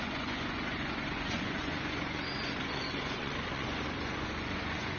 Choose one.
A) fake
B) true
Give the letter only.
A